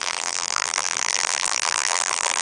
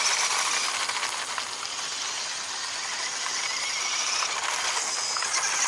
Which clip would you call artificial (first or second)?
first